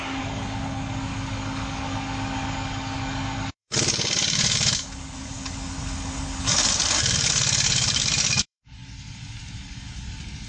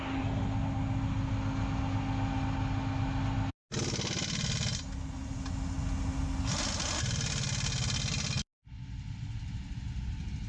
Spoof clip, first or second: first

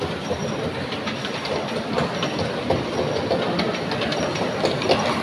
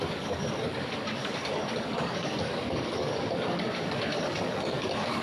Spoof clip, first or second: second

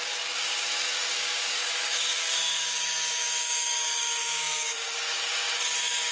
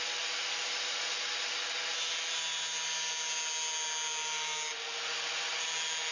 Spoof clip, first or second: first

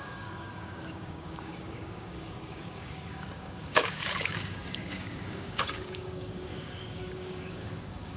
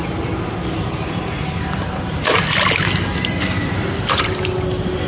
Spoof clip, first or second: first